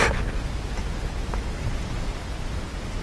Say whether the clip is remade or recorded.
recorded